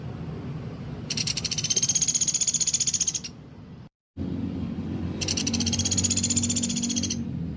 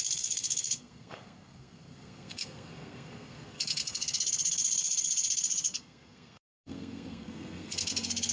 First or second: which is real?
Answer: first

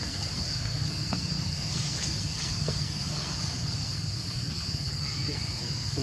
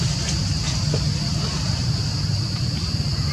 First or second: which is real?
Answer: second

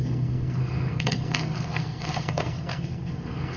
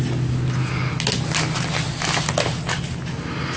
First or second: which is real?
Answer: second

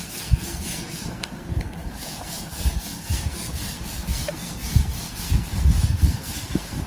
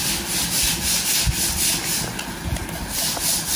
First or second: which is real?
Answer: second